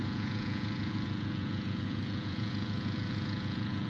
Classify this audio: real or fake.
fake